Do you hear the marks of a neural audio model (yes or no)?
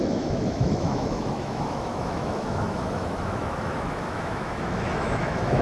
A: yes